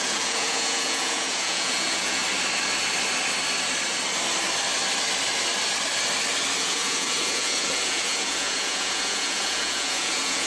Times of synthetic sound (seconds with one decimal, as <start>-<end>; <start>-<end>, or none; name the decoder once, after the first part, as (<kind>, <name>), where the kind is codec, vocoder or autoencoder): 0.0-2.2 (vocoder, Vocos); 6.6-10.5